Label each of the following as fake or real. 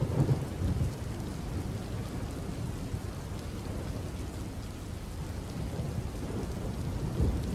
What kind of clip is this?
real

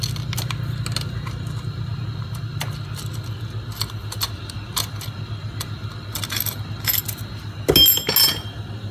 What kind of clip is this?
real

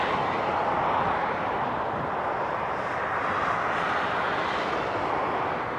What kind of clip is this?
real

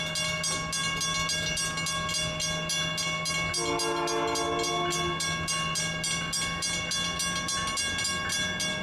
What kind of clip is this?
real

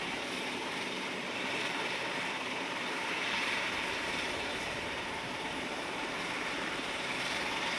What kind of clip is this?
fake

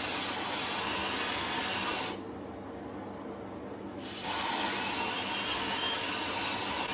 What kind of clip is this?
real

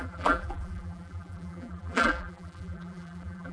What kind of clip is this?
fake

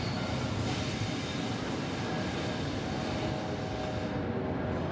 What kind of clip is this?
real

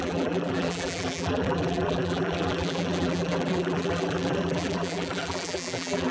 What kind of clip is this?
fake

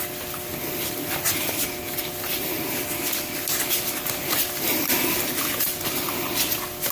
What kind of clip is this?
real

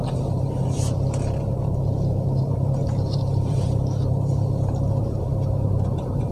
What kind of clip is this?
fake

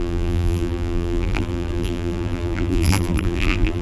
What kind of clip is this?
fake